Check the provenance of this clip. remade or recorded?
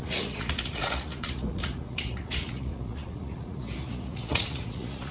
remade